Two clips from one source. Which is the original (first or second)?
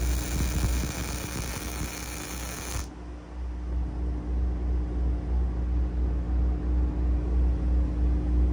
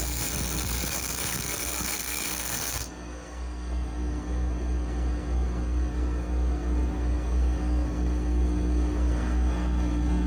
first